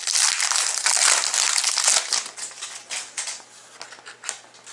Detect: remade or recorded recorded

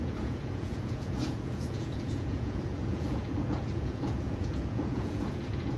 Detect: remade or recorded remade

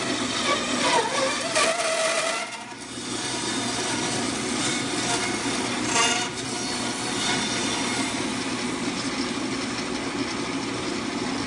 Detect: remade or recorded recorded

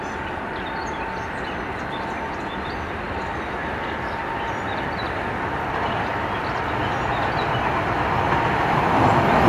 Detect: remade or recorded recorded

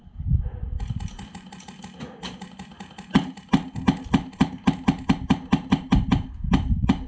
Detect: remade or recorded recorded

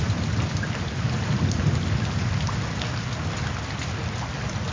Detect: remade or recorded recorded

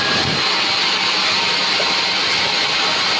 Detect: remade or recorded recorded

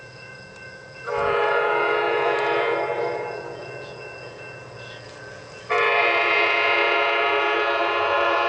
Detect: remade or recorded remade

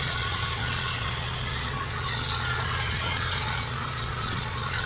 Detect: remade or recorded remade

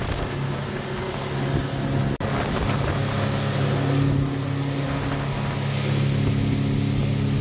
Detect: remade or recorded recorded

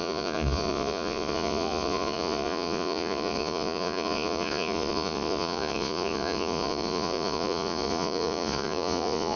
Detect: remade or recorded remade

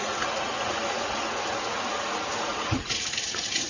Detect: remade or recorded remade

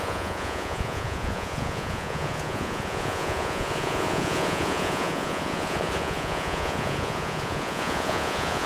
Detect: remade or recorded remade